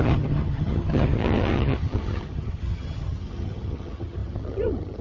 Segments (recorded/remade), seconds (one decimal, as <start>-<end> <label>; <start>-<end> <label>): 0.0-5.0 remade